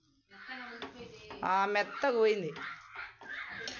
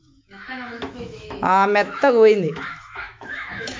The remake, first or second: second